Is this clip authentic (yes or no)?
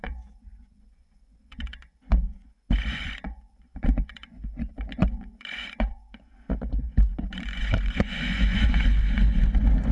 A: no